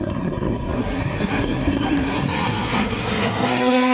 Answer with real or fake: fake